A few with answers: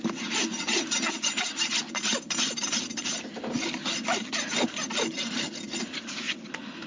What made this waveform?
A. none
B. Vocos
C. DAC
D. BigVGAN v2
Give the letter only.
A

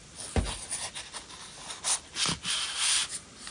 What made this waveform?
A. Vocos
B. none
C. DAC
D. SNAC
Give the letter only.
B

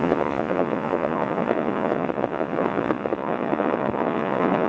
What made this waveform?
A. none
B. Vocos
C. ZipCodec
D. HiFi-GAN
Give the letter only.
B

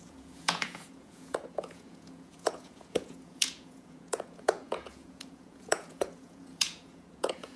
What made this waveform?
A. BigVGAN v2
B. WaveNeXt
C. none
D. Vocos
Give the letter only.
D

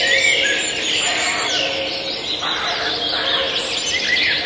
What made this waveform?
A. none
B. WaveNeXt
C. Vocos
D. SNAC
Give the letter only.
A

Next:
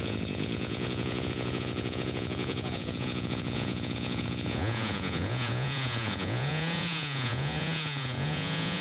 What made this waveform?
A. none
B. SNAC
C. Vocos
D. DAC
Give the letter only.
C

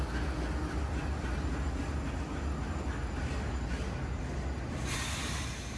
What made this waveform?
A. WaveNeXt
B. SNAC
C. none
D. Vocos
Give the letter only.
C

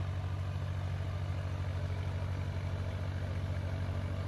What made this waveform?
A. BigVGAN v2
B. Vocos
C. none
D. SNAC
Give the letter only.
C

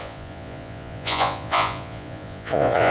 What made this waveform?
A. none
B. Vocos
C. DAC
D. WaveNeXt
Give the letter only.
B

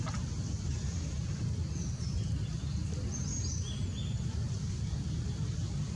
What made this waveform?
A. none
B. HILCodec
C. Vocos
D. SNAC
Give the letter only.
A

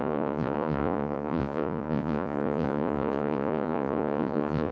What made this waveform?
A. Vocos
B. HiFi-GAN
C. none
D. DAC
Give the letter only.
A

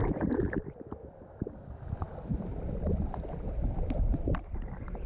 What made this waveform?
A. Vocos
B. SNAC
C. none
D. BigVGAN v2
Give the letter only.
C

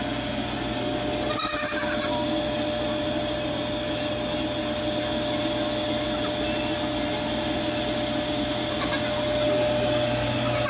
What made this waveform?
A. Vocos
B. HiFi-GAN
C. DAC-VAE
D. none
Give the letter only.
D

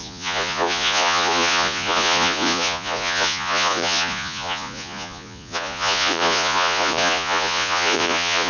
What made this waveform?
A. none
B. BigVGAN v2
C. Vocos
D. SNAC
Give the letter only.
C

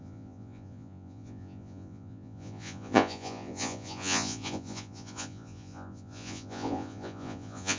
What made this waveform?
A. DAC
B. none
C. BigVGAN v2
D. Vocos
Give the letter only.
D